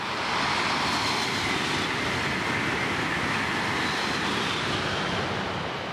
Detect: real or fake real